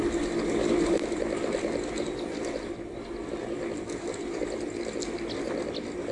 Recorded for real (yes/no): yes